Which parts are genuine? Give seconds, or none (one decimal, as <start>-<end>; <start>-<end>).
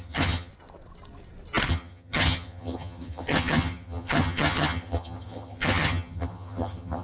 0.5-1.7